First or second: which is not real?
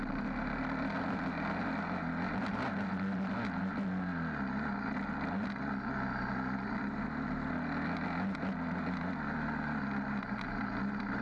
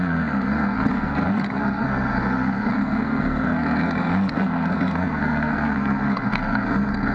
second